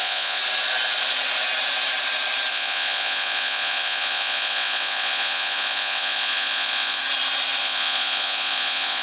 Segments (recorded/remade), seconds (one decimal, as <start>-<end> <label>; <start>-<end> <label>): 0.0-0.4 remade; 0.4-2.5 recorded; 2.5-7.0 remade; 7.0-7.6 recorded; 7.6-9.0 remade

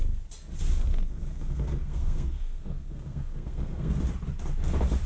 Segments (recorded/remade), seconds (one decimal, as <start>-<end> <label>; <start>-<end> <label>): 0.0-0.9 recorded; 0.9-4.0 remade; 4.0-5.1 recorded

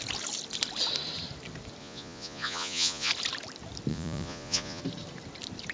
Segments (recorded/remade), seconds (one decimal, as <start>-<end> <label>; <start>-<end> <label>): 0.0-1.8 recorded; 1.8-3.1 remade; 3.1-3.9 recorded; 3.9-4.8 remade; 4.8-5.7 recorded

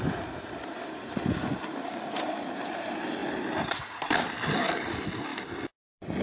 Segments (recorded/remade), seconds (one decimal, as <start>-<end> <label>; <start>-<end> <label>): 0.0-3.2 remade; 3.2-4.6 recorded; 4.6-5.3 remade; 5.3-6.2 recorded

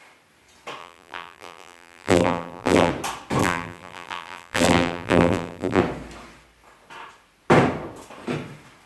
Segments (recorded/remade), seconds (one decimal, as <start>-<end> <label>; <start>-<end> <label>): 0.0-0.8 recorded; 0.8-2.9 remade; 2.9-3.4 recorded; 3.4-5.8 remade; 5.8-8.9 recorded

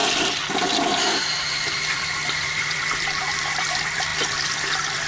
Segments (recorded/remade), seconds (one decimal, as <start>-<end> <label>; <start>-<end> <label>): 0.0-1.0 recorded; 1.0-5.1 remade